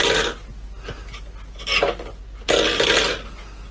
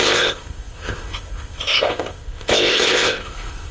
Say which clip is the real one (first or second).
first